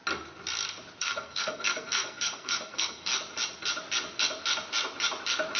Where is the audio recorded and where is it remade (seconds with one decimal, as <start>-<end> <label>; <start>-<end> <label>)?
0.0-1.0 recorded; 1.0-3.1 remade; 3.1-5.6 recorded